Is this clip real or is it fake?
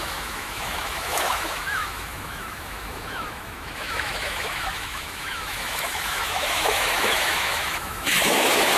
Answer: fake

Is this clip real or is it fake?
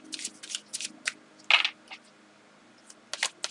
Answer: real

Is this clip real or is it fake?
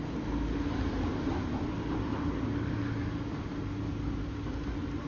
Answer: real